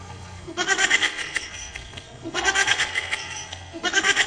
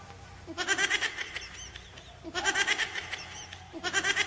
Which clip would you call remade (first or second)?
first